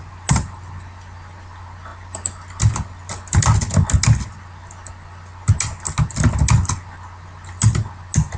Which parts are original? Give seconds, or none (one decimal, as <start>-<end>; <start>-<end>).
0.0-8.4